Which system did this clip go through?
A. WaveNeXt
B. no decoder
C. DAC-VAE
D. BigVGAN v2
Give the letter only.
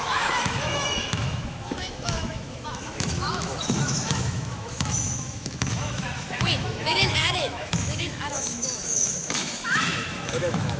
C